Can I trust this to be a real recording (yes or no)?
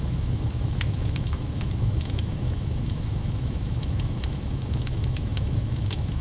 no